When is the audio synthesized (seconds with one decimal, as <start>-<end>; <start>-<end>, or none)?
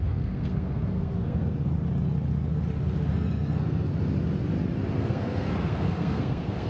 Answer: 0.0-1.7; 3.1-3.9; 5.0-6.7